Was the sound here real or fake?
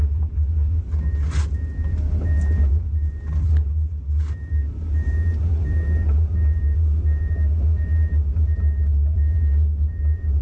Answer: real